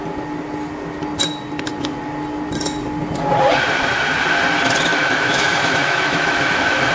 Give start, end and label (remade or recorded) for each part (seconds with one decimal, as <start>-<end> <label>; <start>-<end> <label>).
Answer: 0.0-4.9 recorded; 4.9-6.9 remade